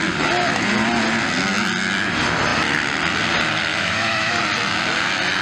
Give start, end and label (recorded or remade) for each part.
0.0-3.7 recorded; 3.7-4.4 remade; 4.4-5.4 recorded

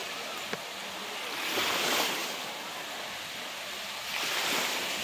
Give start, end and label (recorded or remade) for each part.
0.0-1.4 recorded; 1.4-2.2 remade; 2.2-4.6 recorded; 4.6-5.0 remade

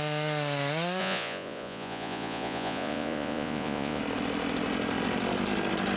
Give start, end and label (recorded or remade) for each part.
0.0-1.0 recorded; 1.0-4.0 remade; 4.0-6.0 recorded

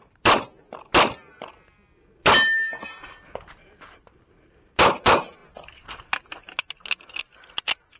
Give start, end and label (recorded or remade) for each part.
0.0-8.0 recorded

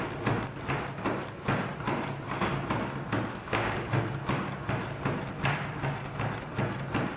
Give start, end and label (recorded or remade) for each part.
0.0-3.4 recorded; 3.4-4.0 remade; 4.0-7.2 recorded